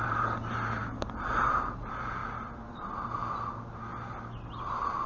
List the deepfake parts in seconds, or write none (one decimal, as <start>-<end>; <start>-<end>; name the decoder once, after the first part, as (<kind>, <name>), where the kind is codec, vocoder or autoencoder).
0.0-2.2 (vocoder, BigVGAN v2); 2.7-3.2; 4.6-5.1